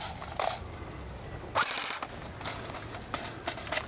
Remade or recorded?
recorded